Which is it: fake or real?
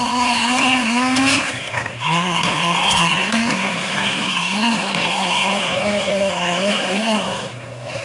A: fake